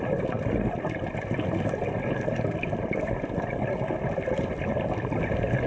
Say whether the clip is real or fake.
real